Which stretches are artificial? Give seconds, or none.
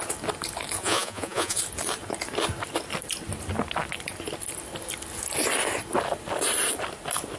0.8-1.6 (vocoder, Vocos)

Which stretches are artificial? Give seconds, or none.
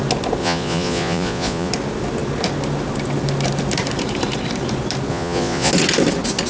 0.4-1.7 (vocoder, Vocos); 5.1-5.7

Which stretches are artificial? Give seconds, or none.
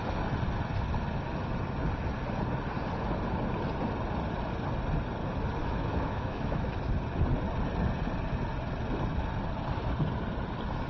5.6-6.7 (autoencoder, DAC-VAE)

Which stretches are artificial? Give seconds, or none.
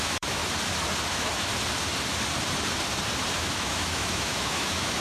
0.0-0.4 (autoencoder, DAC-VAE); 1.0-1.5; 3.4-5.0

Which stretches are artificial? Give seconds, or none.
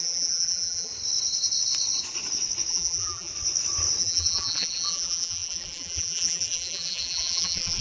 0.0-0.9 (vocoder, BigVGAN v2); 2.7-3.3; 4.0-7.8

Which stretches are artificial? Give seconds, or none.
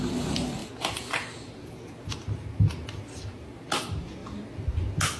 none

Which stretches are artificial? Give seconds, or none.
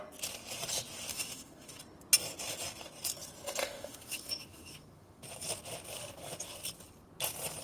1.1-1.8 (autoencoder, DAC-VAE); 3.6-5.2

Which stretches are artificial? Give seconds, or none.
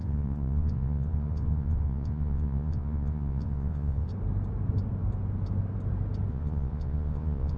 0.0-4.1 (vocoder, Vocos); 6.3-7.6